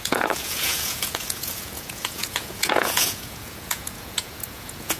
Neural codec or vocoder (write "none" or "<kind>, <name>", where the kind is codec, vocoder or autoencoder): vocoder, Vocos